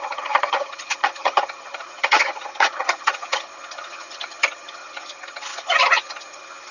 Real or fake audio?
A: fake